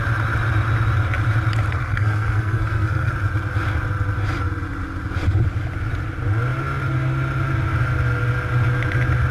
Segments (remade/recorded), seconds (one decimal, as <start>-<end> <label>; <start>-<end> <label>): 0.0-1.7 recorded; 1.7-3.1 remade; 3.1-9.3 recorded